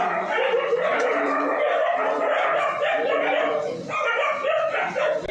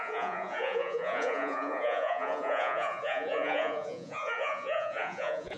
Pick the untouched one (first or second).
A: first